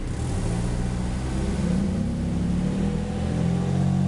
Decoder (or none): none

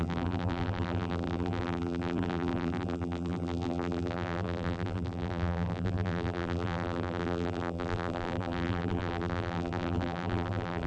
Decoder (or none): vocoder, BigVGAN v2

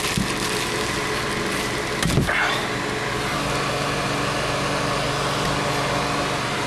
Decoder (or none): none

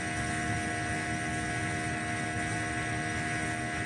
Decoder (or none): none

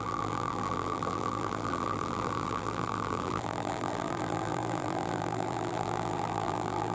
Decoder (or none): vocoder, BigVGAN v2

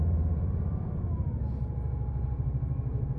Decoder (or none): vocoder, BigVGAN v2